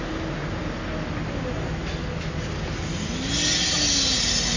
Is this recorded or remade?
recorded